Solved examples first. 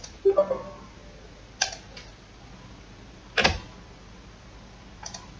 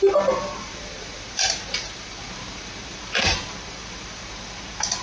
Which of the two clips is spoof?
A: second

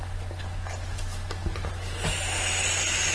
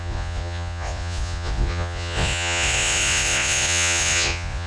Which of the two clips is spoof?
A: second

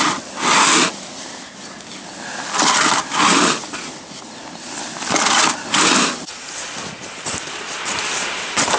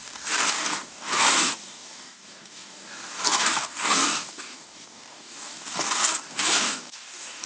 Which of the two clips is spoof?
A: second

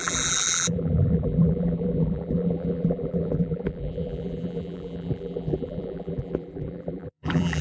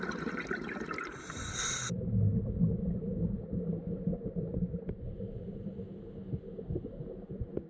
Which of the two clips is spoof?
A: first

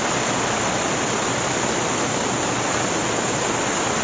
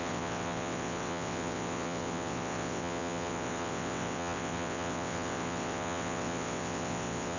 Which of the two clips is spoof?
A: second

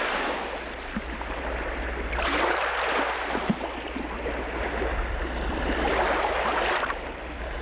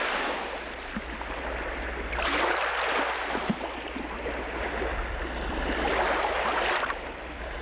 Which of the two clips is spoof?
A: first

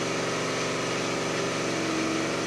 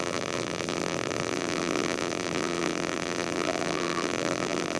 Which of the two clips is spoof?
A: second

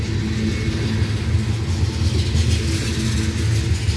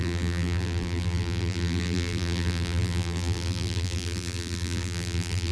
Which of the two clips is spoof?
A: second